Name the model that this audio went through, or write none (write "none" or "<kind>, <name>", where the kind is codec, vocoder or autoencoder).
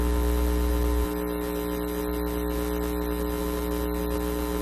none